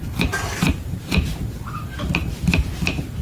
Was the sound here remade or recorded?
remade